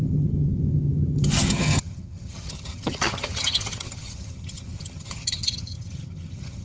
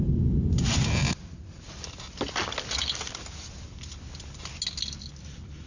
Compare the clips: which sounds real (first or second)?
second